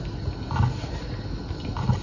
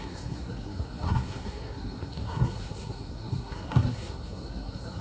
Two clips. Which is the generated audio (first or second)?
second